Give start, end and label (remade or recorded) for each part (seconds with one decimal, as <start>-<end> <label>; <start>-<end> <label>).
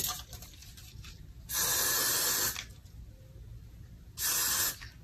0.0-5.0 recorded